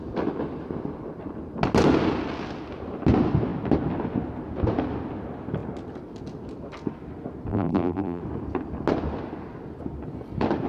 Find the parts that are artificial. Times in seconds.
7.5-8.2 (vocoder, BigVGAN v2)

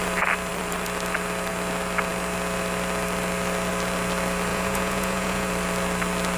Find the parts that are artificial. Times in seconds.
4.5-5.5 (vocoder, Vocos)

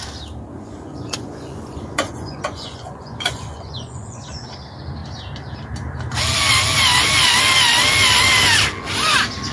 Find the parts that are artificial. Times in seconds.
0.5-4.4 (vocoder, Vocos)

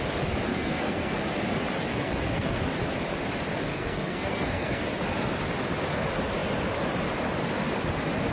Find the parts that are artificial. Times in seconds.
0.5-1.2 (codec, SNAC); 1.9-2.6; 3.7-4.8

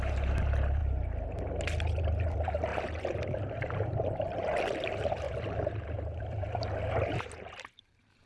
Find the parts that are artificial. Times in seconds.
0.0-0.8 (vocoder, BigVGAN v2); 2.0-8.3

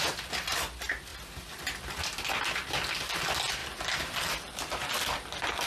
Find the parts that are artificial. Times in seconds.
none